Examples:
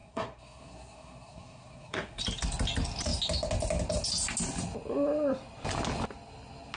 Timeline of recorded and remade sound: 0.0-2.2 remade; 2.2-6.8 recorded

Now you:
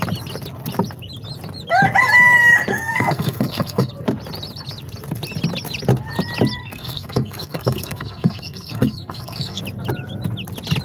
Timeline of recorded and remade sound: 0.0-2.7 recorded; 2.7-3.9 remade; 3.9-6.6 recorded; 6.6-9.6 remade; 9.6-10.8 recorded

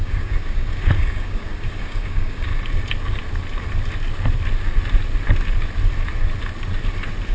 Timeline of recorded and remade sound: 0.0-2.5 remade; 2.5-7.3 recorded

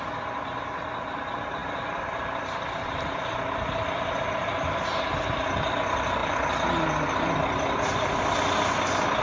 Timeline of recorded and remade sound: 0.0-1.6 recorded; 1.6-5.0 remade; 5.0-6.2 recorded; 6.2-8.2 remade; 8.2-9.2 recorded